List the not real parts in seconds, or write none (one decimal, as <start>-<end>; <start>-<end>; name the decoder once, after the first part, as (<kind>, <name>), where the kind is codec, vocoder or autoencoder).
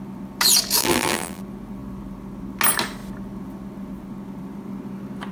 0.8-1.4 (vocoder, BigVGAN v2)